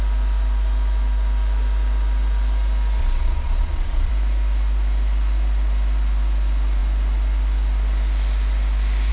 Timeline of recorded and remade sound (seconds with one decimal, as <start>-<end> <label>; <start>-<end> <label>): 0.0-3.0 recorded; 3.0-4.1 remade; 4.1-9.1 recorded